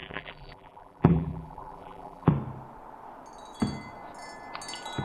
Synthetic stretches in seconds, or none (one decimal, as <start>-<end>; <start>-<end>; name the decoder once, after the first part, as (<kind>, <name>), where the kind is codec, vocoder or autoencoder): 0.0-2.3 (vocoder, BigVGAN v2)